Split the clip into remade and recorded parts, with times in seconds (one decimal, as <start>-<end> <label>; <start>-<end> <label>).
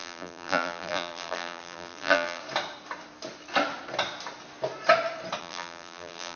0.0-2.4 remade; 2.4-5.4 recorded; 5.4-6.4 remade